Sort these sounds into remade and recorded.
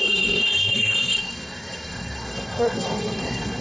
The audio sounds remade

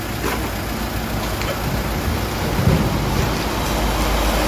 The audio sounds recorded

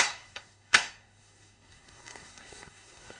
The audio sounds remade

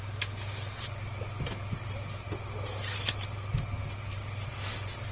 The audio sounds recorded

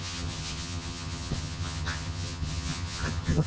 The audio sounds remade